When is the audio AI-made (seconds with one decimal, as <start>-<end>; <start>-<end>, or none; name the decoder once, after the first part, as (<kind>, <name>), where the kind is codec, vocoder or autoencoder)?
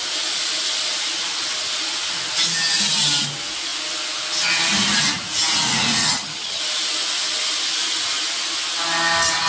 6.0-6.6 (vocoder, HiFi-GAN)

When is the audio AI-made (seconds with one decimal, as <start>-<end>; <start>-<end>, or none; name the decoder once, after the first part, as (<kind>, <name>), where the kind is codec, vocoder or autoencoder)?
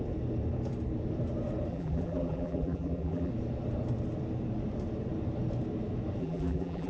1.7-3.3 (vocoder, BigVGAN v2); 6.2-6.9